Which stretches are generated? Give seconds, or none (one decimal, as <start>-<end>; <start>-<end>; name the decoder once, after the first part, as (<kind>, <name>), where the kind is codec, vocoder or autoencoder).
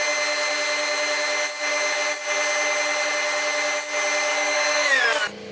4.3-5.0 (codec, DAC)